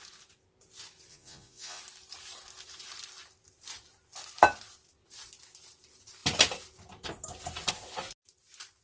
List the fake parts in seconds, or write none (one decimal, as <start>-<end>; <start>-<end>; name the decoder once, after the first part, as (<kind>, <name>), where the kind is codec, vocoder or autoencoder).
1.1-1.8 (vocoder, Vocos)

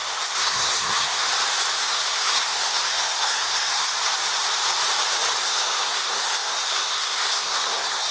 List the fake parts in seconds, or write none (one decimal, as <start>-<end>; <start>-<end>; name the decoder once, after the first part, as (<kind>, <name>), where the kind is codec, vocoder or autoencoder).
0.0-1.3 (codec, SNAC); 1.8-3.9; 5.4-8.1